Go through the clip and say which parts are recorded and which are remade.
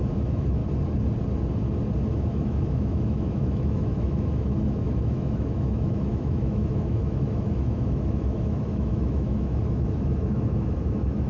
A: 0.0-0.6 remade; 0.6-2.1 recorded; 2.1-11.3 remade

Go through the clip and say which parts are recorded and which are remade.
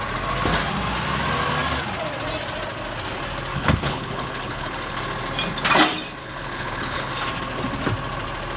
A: 0.0-3.5 recorded; 3.5-5.0 remade; 5.0-6.2 recorded; 6.2-7.1 remade; 7.1-8.6 recorded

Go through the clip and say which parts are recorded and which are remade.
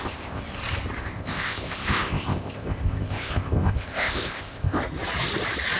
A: 0.0-0.4 remade; 0.4-1.0 recorded; 1.0-4.8 remade; 4.8-5.8 recorded